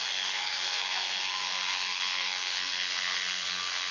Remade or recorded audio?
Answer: remade